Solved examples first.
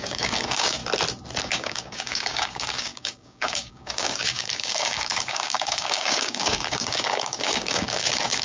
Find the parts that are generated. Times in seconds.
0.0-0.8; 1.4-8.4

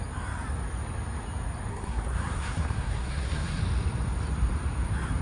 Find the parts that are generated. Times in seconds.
1.7-3.6

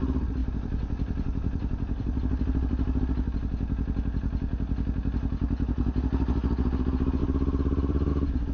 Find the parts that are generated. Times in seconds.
0.4-3.0; 7.2-8.1

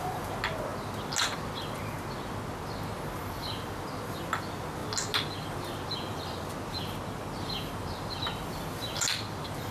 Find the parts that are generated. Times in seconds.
none

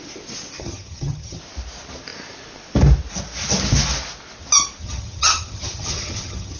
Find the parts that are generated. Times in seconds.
0.6-1.4; 4.8-6.6

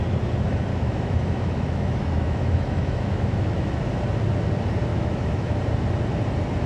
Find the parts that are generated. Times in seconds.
0.7-4.0; 4.9-5.6